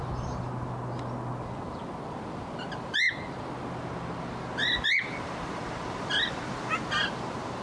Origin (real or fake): real